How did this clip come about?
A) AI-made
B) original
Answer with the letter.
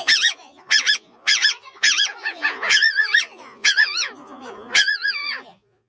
A